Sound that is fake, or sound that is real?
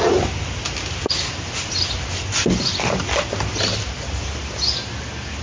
real